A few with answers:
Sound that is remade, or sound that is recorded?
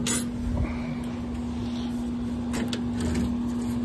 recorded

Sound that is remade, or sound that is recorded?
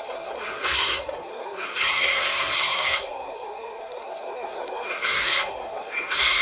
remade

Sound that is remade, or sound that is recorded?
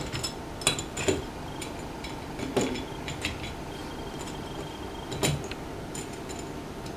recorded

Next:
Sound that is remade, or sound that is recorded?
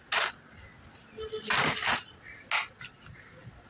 recorded